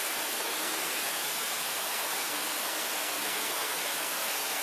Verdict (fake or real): fake